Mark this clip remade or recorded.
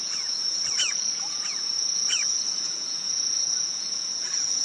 remade